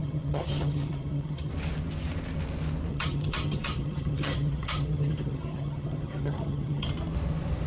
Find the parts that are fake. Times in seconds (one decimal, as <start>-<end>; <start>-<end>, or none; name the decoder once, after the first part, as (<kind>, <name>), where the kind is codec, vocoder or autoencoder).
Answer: 0.0-1.5 (vocoder, HiFi-GAN); 2.9-6.9